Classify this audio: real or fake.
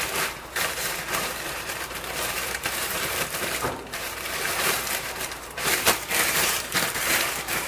fake